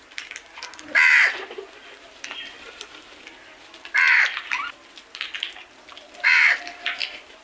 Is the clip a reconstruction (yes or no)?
no